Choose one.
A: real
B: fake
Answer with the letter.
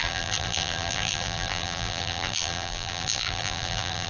B